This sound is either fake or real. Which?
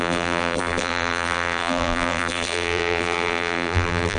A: fake